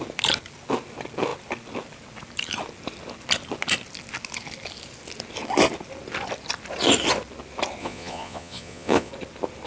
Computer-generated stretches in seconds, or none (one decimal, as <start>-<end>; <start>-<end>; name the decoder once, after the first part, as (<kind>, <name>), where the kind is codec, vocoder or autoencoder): 7.8-9.1 (vocoder, Vocos)